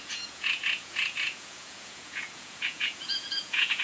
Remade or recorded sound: remade